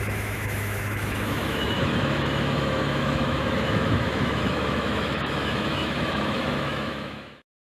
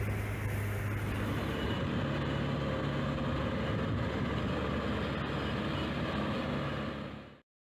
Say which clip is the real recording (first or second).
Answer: second